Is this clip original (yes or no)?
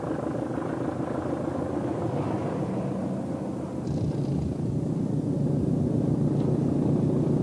yes